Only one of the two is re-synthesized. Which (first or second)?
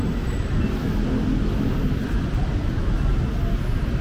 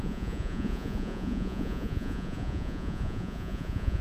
second